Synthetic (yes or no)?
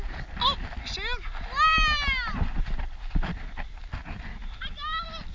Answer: no